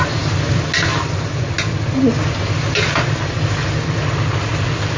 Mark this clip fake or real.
real